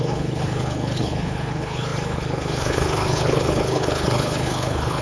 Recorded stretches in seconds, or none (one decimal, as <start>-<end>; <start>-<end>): none

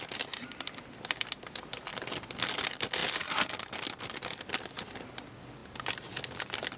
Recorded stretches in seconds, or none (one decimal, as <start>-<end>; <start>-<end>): 0.0-6.8

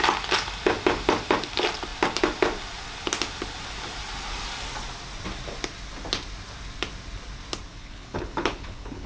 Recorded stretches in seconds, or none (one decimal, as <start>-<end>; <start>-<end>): 0.0-7.7

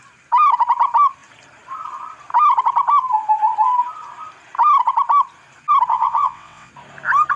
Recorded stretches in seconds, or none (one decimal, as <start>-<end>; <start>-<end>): 0.0-5.9; 6.7-7.4